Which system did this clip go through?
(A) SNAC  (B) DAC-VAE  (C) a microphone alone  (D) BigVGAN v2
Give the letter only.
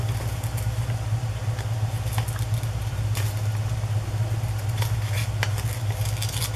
C